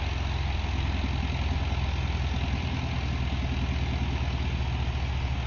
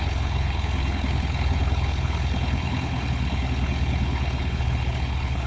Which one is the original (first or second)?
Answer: first